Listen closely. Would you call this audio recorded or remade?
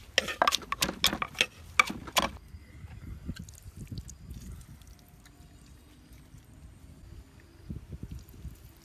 recorded